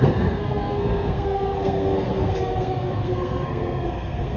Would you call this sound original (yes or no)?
no